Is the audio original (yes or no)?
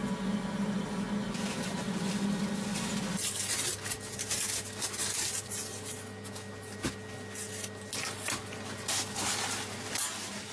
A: yes